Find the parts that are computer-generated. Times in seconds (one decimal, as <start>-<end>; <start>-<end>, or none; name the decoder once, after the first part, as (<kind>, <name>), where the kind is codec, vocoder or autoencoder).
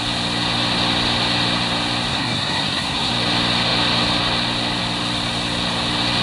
2.1-3.1 (codec, SNAC)